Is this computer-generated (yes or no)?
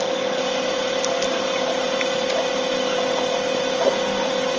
no